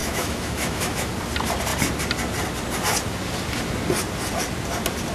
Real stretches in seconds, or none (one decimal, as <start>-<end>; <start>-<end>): 1.1-5.1